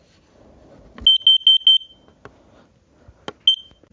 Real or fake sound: real